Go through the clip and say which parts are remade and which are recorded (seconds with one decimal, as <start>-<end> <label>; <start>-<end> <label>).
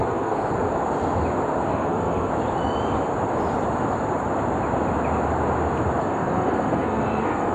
0.0-0.5 remade; 0.5-1.7 recorded; 1.7-2.3 remade; 2.3-6.0 recorded; 6.0-7.5 remade